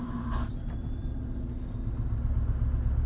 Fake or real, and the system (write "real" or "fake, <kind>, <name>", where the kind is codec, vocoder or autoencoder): real